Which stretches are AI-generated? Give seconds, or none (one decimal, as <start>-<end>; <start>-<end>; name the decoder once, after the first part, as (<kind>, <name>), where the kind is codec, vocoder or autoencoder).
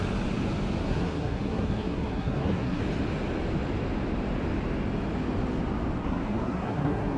0.8-2.8 (codec, SNAC); 6.0-7.2